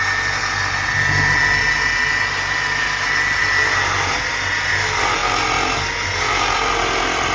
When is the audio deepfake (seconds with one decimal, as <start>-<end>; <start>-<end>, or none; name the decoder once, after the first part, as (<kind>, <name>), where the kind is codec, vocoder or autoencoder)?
none